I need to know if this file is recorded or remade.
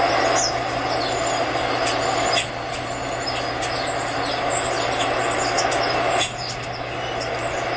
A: recorded